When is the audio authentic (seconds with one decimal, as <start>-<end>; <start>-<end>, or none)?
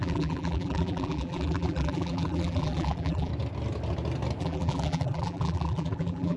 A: 3.3-4.4